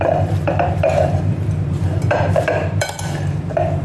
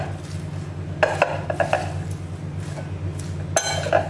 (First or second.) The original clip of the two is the second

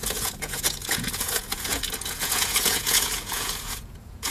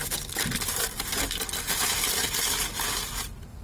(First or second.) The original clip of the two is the second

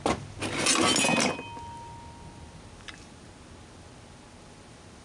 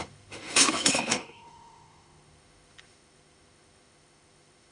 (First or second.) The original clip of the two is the first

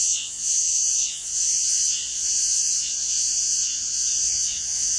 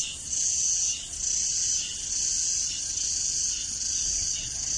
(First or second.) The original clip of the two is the second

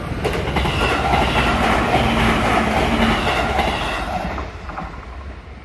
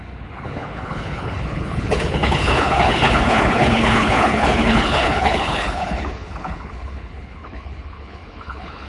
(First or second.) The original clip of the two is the first